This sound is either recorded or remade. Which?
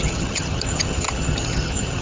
remade